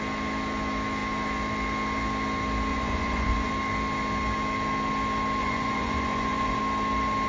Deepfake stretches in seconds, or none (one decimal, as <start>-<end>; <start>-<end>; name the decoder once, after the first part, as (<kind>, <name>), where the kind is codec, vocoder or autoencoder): 2.7-3.5 (vocoder, Vocos); 5.4-6.6